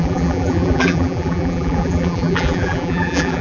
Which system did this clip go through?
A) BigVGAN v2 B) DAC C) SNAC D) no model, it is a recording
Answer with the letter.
A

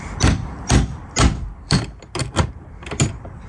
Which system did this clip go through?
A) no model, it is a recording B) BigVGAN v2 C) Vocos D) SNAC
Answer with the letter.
B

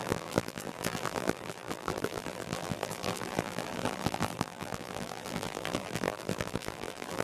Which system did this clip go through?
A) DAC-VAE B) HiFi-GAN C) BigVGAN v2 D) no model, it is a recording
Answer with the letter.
C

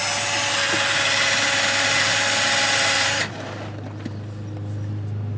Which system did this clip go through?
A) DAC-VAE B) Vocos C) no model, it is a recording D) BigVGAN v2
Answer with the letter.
C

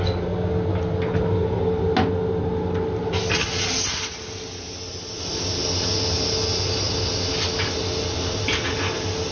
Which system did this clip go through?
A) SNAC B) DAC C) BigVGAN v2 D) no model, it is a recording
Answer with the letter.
D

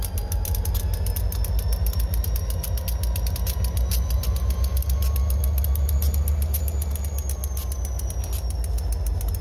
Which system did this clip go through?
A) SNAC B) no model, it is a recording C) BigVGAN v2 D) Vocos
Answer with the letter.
B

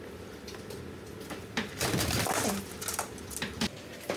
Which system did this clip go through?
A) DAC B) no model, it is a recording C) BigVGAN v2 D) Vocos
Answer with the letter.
B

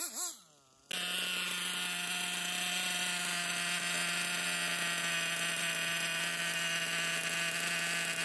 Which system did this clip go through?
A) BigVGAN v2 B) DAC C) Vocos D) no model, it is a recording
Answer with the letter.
D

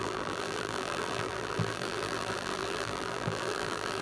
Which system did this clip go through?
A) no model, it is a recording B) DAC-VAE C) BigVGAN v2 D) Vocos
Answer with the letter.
C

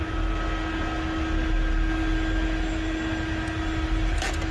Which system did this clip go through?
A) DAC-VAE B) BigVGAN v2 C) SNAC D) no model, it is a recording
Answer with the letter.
D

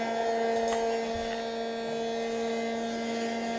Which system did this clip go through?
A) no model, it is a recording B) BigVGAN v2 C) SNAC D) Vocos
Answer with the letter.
A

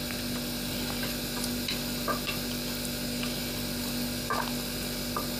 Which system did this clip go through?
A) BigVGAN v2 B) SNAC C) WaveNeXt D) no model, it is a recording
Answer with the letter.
D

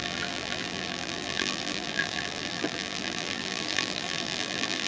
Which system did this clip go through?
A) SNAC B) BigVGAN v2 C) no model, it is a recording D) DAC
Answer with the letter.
B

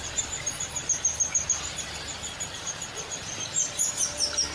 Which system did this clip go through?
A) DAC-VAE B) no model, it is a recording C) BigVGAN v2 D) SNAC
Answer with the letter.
C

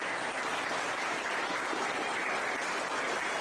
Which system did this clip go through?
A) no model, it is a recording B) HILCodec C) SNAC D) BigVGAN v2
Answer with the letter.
A